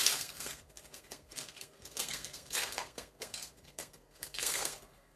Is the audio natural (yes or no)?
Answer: no